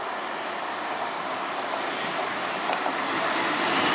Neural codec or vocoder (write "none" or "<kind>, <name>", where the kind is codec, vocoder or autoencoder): none